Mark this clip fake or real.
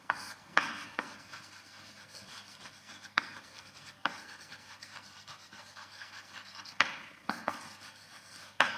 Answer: fake